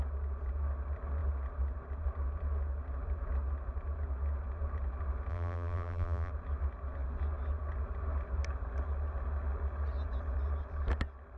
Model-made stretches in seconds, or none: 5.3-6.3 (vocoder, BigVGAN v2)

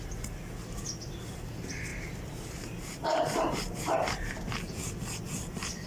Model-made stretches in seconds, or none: 1.9-4.9 (vocoder, BigVGAN v2)

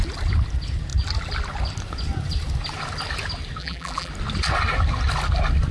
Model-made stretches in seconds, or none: 3.6-4.1 (vocoder, BigVGAN v2)

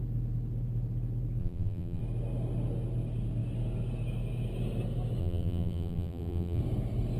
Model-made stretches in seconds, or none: 1.4-2.0 (vocoder, BigVGAN v2); 5.2-6.6

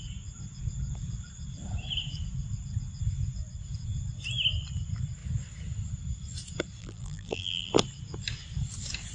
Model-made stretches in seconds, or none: 6.8-7.7 (vocoder, BigVGAN v2)